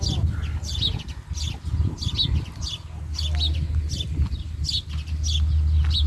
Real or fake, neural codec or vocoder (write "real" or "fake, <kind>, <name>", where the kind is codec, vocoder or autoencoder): real